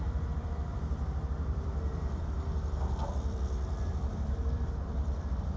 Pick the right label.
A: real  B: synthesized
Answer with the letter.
B